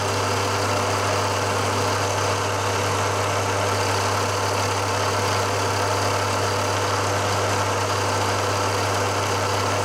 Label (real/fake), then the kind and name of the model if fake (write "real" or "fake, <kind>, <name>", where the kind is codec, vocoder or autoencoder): real